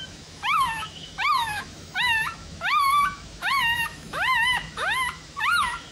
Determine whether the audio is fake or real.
fake